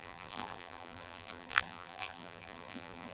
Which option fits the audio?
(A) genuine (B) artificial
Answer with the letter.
B